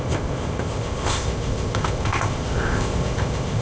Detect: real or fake fake